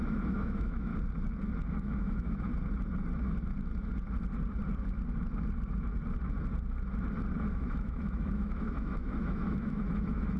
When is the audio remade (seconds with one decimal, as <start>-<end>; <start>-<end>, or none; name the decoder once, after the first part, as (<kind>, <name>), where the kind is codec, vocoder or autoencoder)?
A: 0.0-0.9 (autoencoder, DAC-VAE); 1.7-2.5; 7.5-10.4